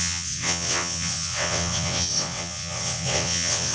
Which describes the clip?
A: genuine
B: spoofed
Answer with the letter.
B